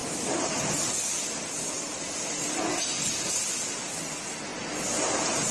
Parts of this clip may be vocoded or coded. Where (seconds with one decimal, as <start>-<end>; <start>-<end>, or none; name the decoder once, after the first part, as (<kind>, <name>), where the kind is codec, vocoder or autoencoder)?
none